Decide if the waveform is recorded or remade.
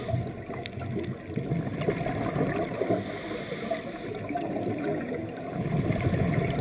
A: recorded